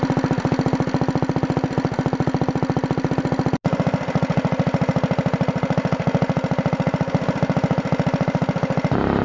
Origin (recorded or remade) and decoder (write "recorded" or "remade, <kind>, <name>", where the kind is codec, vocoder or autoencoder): recorded